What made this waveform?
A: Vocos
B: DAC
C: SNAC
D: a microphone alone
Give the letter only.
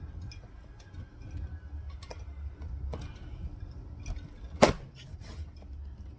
D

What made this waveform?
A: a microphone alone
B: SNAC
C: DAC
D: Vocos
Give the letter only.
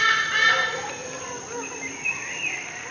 A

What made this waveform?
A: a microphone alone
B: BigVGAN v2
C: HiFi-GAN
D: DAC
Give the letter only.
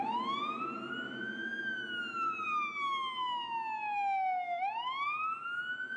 A